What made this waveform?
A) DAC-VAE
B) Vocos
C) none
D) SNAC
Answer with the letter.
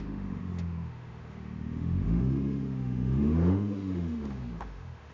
A